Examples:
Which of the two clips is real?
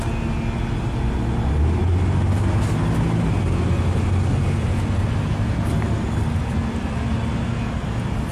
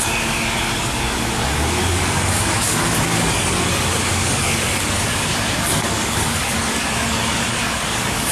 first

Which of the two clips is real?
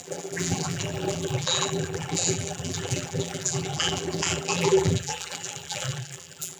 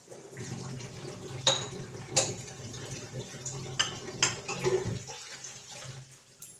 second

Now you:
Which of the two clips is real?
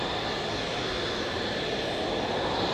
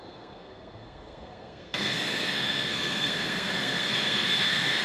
first